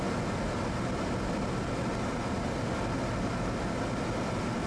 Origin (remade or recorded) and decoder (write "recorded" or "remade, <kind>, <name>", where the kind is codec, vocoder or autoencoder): recorded